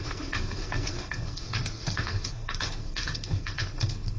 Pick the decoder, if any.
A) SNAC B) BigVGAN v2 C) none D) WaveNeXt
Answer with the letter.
A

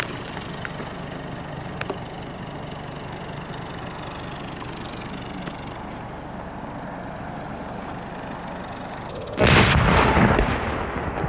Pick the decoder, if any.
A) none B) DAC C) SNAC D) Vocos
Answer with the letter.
A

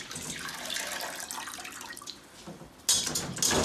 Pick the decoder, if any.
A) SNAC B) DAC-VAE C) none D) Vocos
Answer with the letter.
C